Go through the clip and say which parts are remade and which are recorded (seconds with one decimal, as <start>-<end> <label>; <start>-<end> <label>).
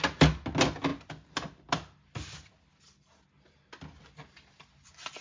0.0-5.2 recorded